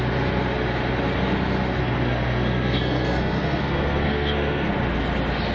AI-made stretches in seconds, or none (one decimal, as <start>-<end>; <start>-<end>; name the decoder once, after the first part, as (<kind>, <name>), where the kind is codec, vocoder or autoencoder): 1.8-4.7 (codec, SNAC)